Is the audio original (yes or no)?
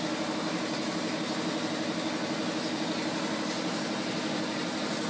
yes